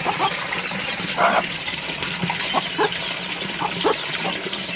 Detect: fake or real real